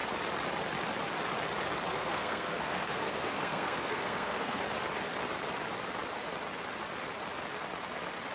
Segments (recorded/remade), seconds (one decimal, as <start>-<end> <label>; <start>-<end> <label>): 0.0-1.9 recorded; 1.9-4.6 remade; 4.6-8.3 recorded